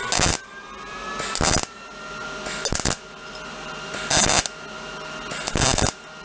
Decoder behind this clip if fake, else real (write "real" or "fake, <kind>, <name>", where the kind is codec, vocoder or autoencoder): real